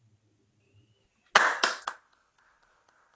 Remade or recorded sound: recorded